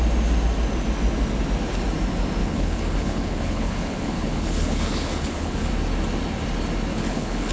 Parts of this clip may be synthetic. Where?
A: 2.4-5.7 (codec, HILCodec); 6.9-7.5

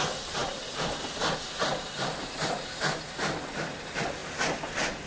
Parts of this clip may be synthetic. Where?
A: none